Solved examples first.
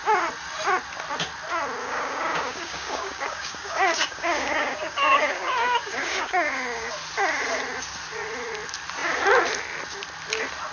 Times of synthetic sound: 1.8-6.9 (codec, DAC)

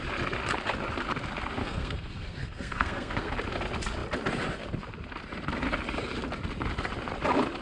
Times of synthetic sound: 1.6-3.3 (codec, SNAC)

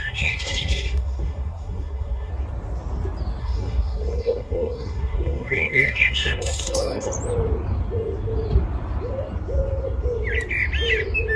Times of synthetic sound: 0.0-2.3 (codec, SNAC); 3.4-7.1

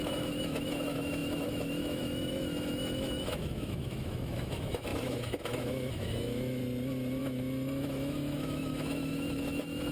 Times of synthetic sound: 0.0-6.6 (autoencoder, DAC-VAE); 7.2-9.9

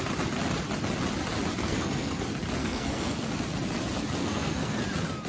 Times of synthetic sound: 1.6-2.2 (codec, SNAC); 2.6-3.3; 4.2-4.8

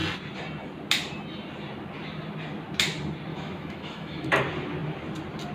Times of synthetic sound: 3.3-4.3 (autoencoder, DAC-VAE)